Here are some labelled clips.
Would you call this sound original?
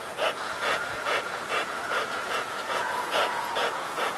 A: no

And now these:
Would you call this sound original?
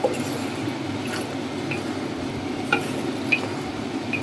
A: yes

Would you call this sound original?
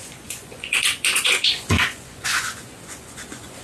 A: no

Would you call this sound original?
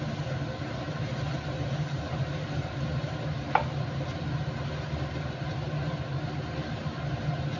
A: yes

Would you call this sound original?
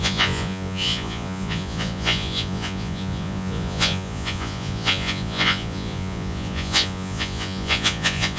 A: no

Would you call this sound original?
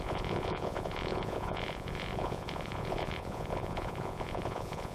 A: no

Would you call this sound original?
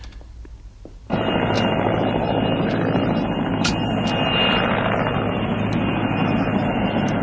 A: yes